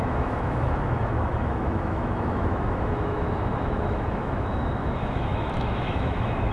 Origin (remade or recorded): remade